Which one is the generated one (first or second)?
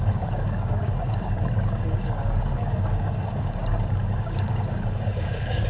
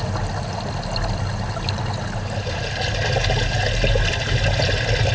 first